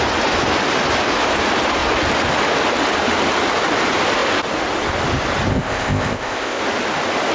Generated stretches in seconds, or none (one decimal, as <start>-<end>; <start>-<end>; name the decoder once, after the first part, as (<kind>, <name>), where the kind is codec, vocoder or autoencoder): 5.5-6.6 (codec, ZipCodec)